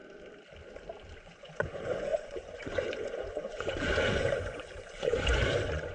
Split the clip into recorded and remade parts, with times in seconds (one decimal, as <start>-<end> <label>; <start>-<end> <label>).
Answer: 0.0-1.2 recorded; 1.2-5.9 remade